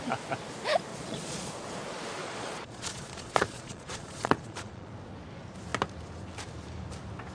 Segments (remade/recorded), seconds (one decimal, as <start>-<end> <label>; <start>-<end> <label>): 0.0-0.9 recorded; 0.9-1.5 remade; 1.5-2.2 recorded; 2.2-4.9 remade; 4.9-7.3 recorded